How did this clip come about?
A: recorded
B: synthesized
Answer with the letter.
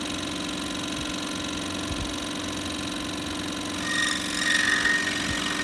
A